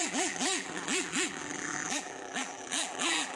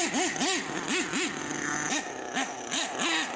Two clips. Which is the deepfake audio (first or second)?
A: first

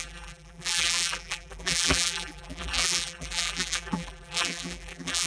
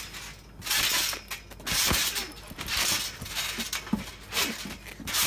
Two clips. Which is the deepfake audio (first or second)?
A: first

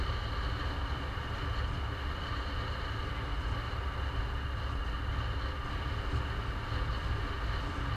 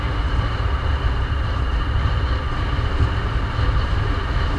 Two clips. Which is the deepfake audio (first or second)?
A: second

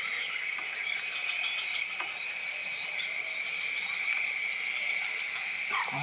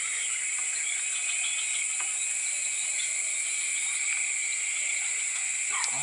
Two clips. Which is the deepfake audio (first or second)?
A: first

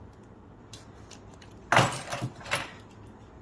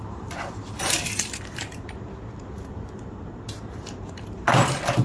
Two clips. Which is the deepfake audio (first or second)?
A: second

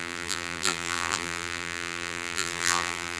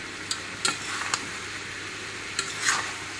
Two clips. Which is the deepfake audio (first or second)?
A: first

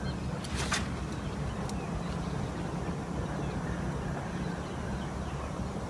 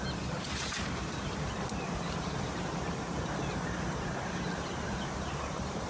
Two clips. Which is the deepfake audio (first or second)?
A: second